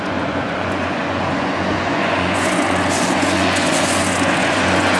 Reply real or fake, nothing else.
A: fake